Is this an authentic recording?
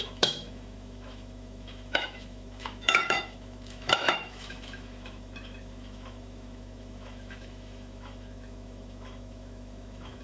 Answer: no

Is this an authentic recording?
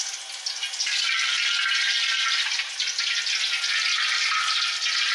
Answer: yes